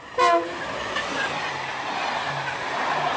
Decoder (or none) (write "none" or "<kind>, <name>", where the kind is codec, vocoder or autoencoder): none